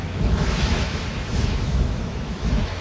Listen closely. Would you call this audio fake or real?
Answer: fake